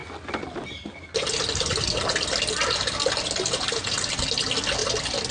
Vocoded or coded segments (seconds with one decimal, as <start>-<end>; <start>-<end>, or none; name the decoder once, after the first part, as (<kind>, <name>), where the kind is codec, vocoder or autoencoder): none